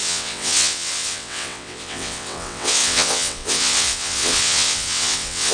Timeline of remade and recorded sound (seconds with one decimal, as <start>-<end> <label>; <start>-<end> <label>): 0.0-5.5 remade